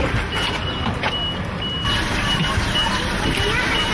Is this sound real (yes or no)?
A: yes